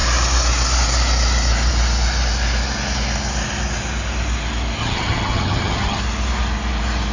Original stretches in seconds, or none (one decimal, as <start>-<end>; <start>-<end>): 0.0-4.8; 6.0-7.1